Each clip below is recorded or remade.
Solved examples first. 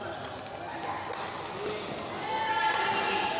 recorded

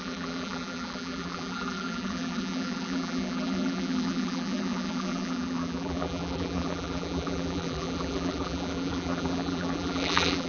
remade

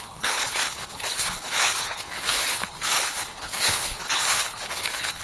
remade